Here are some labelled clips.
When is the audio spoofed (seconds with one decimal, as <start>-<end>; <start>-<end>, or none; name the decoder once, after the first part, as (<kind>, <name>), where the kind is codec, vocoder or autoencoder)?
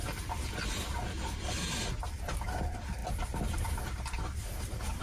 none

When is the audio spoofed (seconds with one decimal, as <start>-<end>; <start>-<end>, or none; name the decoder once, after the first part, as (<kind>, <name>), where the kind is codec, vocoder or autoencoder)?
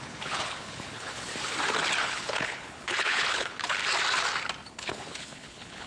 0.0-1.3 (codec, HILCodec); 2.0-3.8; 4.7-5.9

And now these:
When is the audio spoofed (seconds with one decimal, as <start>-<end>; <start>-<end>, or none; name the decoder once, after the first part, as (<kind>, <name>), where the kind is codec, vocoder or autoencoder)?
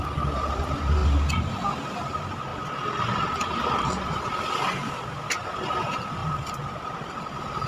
none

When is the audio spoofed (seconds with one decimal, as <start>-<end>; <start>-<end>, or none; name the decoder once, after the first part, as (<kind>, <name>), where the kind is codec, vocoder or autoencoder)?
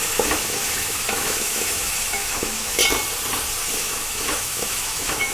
0.0-2.8 (autoencoder, DAC-VAE); 3.7-5.3